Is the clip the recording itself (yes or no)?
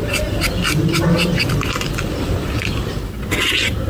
yes